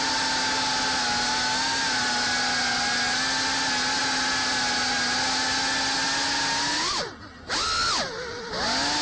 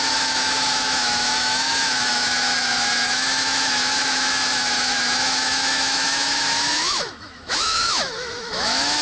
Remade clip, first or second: second